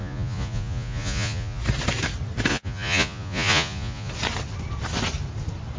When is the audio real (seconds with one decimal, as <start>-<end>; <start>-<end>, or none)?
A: 1.6-2.5; 4.1-5.8